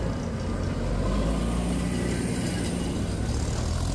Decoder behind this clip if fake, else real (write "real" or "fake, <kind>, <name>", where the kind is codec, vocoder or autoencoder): real